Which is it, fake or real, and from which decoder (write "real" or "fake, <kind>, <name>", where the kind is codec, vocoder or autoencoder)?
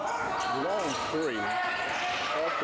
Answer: real